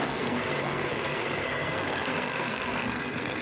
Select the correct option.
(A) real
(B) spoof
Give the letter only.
B